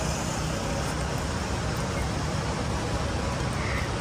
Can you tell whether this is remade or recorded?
recorded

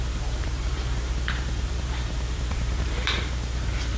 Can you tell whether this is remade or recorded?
remade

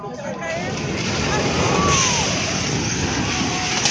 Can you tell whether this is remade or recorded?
recorded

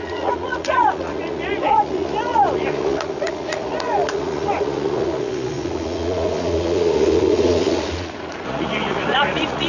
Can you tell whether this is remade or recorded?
remade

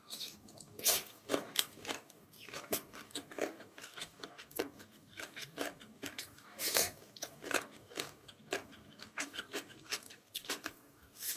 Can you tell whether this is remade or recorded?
remade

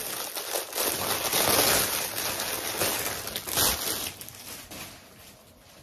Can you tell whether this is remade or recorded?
recorded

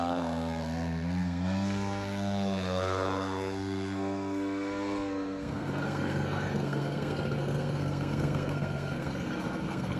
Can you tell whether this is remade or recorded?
remade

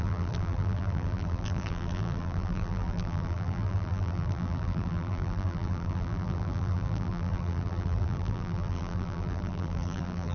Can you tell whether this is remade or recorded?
remade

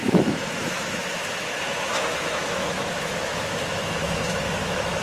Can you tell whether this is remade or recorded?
remade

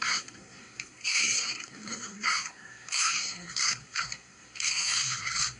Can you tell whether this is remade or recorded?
remade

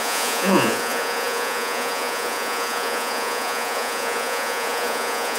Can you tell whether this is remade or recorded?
remade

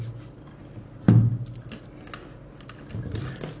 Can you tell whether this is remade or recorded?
recorded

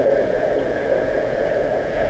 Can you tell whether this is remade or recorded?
remade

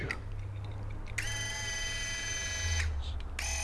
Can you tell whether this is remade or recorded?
recorded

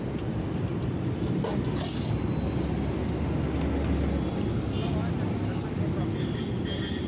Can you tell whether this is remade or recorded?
recorded